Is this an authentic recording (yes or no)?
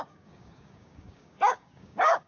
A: no